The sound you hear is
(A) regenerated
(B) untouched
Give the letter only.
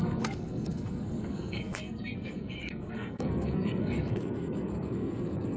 A